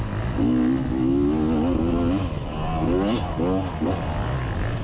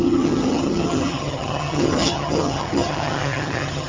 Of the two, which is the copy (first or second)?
second